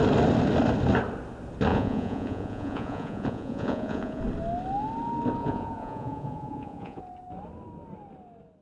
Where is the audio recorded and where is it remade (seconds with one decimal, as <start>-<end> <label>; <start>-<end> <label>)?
0.0-1.7 recorded; 1.7-4.2 remade; 4.2-5.4 recorded; 5.4-7.0 remade; 7.0-8.6 recorded